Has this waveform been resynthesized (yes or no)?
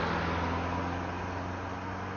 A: no